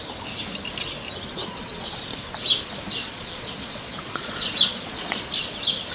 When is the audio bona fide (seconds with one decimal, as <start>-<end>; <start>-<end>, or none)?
0.0-1.3; 2.0-3.0; 5.4-5.9